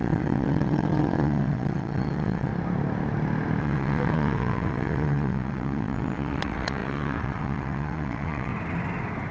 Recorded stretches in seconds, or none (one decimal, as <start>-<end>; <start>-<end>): 2.5-3.6; 8.5-9.3